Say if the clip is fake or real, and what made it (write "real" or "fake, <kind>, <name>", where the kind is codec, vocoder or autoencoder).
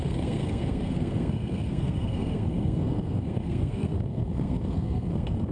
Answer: fake, codec, SNAC